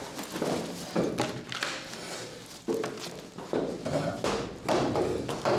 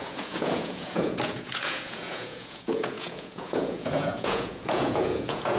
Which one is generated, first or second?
second